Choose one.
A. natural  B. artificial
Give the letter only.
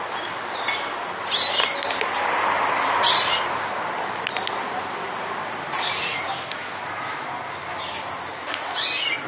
A